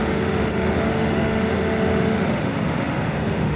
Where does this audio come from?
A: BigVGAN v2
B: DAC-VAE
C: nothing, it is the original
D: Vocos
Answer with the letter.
B